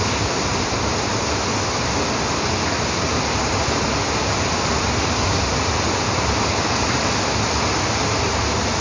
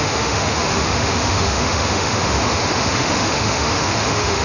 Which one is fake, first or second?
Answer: second